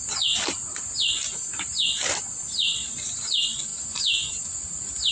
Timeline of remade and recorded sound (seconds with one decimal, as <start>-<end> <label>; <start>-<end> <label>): 0.0-5.1 recorded